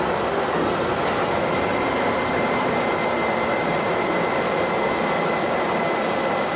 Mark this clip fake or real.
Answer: real